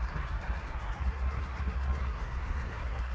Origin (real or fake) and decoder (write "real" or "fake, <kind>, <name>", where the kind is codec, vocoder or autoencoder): fake, codec, SNAC